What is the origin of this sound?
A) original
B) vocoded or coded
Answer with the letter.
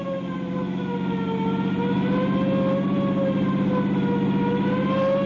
A